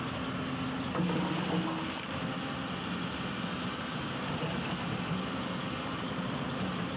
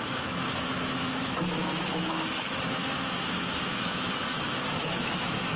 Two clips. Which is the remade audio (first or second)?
second